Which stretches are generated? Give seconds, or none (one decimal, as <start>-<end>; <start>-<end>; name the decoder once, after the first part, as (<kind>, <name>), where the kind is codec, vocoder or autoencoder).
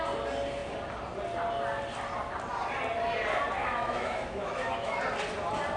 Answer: 3.6-5.0 (autoencoder, DAC-VAE)